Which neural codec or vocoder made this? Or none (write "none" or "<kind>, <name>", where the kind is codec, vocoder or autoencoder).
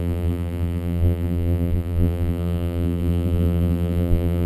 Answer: vocoder, BigVGAN v2